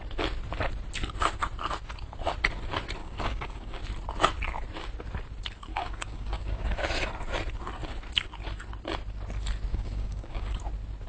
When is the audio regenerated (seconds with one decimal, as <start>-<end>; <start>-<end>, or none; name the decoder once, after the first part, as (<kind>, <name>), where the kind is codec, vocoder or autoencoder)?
3.0-3.8 (codec, DAC); 5.7-6.9; 9.7-10.6